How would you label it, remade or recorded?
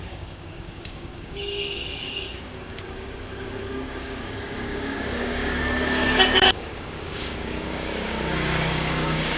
remade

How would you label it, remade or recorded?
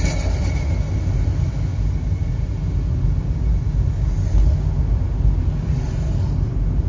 recorded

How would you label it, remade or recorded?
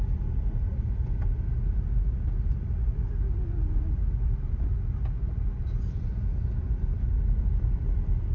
recorded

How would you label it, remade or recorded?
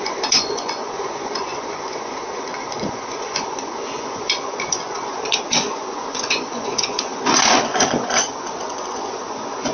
remade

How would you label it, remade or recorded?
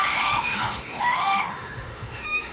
remade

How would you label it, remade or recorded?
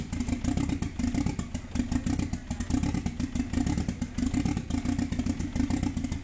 recorded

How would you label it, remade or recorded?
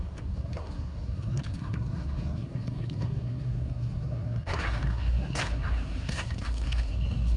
remade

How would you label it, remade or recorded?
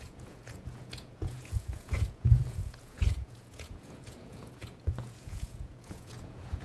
remade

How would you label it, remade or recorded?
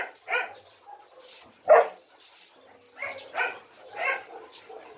recorded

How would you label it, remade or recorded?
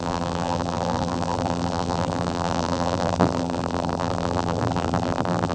remade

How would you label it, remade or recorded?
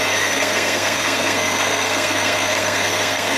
remade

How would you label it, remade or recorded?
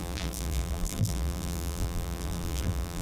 remade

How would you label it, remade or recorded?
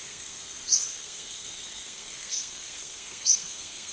remade